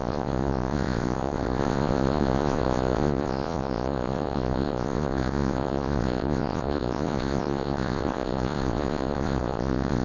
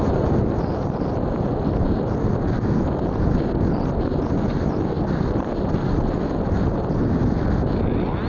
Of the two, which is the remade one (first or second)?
first